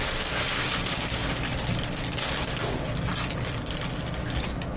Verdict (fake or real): real